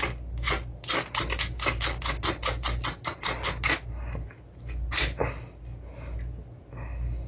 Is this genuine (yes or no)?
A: yes